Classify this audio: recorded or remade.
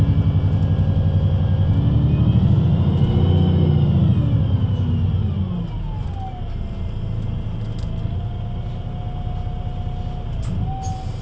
recorded